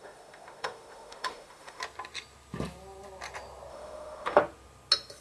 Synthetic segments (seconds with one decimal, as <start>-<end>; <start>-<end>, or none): 0.0-1.8; 3.7-4.4